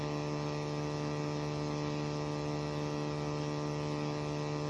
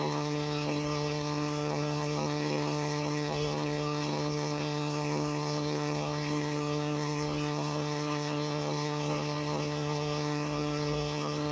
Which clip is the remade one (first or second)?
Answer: second